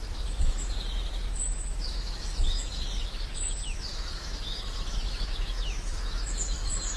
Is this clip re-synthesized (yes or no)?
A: yes